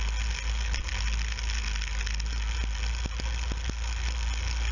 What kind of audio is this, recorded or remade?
recorded